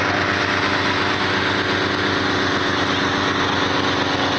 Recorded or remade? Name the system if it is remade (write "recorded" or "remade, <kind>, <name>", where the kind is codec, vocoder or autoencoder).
recorded